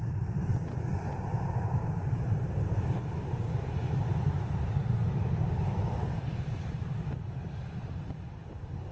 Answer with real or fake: fake